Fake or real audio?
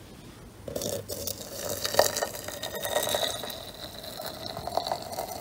real